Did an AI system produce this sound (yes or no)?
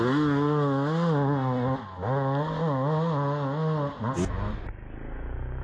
no